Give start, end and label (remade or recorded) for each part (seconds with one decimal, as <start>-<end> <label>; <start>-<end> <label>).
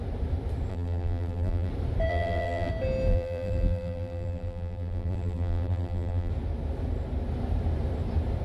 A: 0.0-0.7 recorded; 0.7-1.7 remade; 1.7-2.1 recorded; 2.1-2.7 remade; 2.7-3.1 recorded; 3.1-6.3 remade; 6.3-8.4 recorded